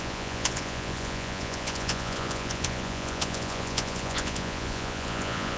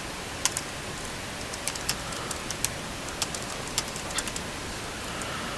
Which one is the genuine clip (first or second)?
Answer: second